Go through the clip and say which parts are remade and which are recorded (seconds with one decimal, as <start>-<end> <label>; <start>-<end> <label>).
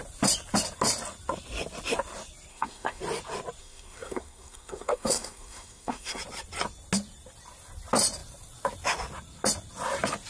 0.0-2.5 recorded; 2.5-3.0 remade; 3.0-3.6 recorded; 3.6-6.2 remade; 6.2-10.3 recorded